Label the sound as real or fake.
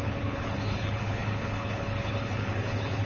fake